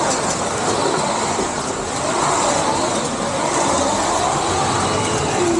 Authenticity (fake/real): real